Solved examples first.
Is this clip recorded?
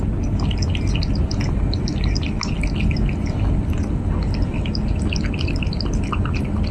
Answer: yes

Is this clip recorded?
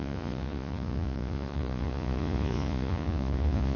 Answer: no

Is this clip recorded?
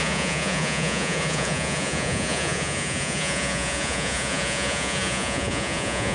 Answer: no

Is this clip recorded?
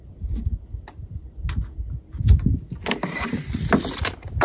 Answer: yes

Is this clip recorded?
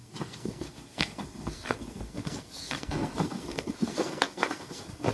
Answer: no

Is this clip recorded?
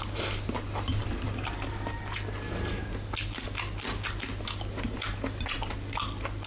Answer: yes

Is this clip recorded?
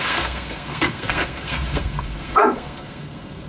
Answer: no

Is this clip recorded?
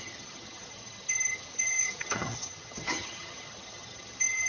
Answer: no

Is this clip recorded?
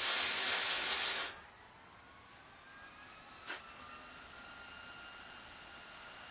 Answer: yes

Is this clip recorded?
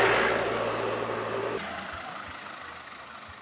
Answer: yes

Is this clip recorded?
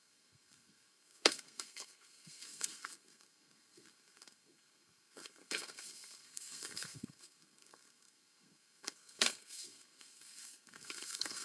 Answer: no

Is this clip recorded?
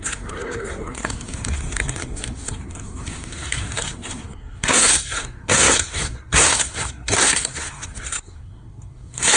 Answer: no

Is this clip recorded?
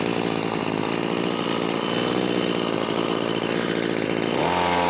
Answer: yes